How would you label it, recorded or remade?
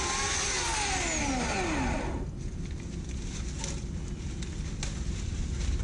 recorded